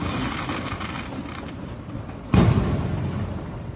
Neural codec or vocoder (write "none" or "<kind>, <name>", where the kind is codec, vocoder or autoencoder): none